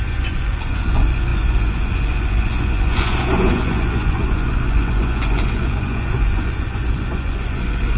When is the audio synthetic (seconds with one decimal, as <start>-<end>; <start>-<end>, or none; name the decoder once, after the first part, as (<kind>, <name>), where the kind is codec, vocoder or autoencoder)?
0.0-8.0 (vocoder, Vocos)